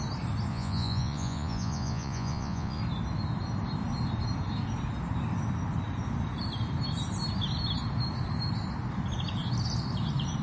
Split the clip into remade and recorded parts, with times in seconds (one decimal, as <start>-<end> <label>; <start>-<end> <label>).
0.0-0.5 recorded; 0.5-2.8 remade; 2.8-10.4 recorded